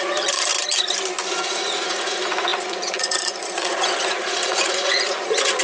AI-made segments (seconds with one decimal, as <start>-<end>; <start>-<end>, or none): 0.0-0.5; 1.3-5.6